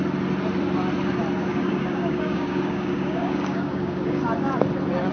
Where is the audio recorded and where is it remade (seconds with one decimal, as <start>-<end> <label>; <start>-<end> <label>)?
0.0-1.5 recorded; 1.5-4.2 remade; 4.2-5.1 recorded